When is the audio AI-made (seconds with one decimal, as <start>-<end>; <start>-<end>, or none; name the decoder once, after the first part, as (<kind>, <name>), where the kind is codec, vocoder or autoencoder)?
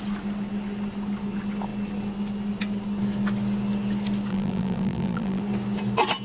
4.3-5.4 (vocoder, BigVGAN v2)